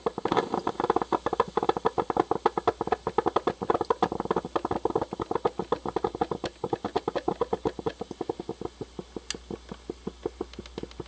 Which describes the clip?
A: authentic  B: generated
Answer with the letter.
A